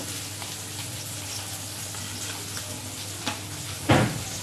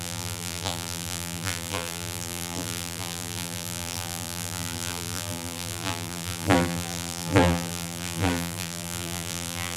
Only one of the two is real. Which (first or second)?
first